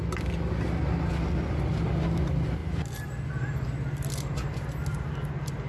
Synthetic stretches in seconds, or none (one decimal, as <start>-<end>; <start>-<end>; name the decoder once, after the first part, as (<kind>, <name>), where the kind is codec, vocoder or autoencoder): none